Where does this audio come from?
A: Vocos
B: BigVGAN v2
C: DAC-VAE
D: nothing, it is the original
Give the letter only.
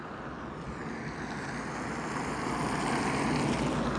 D